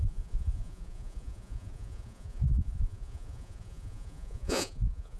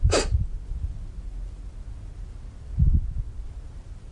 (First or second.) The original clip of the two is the second